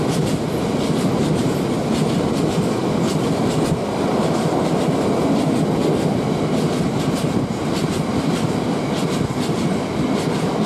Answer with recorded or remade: recorded